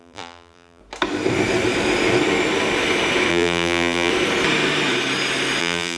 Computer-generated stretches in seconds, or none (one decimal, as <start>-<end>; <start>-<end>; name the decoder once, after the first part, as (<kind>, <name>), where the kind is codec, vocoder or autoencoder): 0.0-0.8 (vocoder, BigVGAN v2); 3.3-4.1; 5.6-6.0